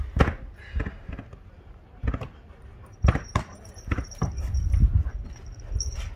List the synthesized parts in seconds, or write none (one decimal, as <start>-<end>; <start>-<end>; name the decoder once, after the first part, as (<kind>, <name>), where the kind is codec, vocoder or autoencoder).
1.3-4.6 (vocoder, BigVGAN v2)